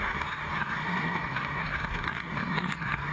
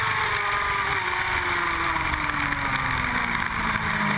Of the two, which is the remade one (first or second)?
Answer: first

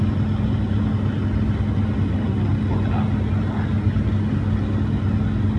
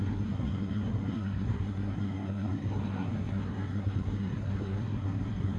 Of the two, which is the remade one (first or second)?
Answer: second